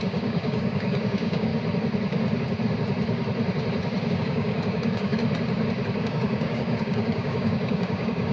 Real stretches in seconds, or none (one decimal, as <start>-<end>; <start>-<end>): 1.5-4.1; 5.2-6.0